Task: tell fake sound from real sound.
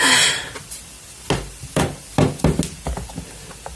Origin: real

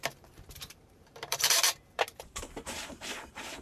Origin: fake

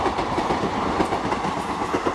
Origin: real